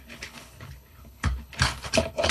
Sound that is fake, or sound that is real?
fake